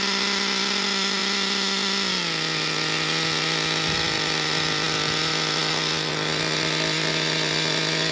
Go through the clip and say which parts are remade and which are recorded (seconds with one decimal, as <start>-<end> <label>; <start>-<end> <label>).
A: 0.0-8.1 recorded